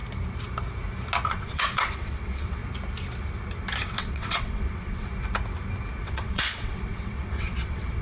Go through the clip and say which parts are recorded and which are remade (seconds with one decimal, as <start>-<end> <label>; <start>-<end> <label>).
0.0-1.3 recorded; 1.3-2.6 remade; 2.6-4.0 recorded; 4.0-5.1 remade; 5.1-6.0 recorded; 6.0-8.0 remade